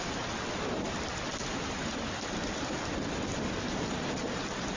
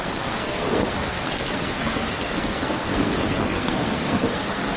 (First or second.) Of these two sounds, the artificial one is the second